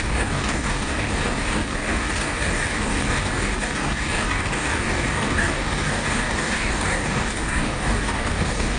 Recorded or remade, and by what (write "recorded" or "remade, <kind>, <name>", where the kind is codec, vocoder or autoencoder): remade, codec, DAC